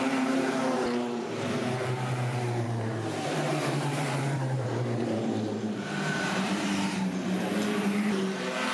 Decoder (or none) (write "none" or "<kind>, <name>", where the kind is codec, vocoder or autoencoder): vocoder, BigVGAN v2